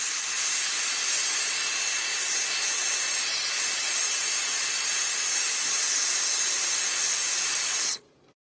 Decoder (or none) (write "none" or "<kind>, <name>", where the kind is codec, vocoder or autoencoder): none